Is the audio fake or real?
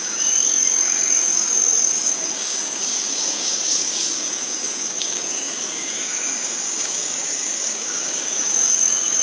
fake